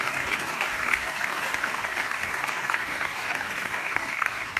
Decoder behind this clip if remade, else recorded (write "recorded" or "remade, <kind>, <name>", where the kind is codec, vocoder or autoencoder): remade, codec, DAC